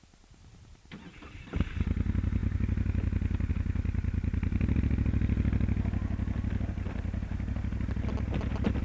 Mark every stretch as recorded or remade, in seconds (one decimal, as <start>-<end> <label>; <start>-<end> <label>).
0.0-8.8 recorded